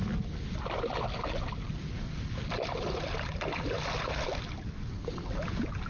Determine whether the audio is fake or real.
real